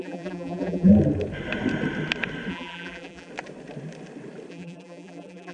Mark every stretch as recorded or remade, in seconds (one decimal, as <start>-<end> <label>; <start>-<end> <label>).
0.0-0.9 remade; 0.9-2.5 recorded; 2.5-3.3 remade; 3.3-4.5 recorded; 4.5-5.5 remade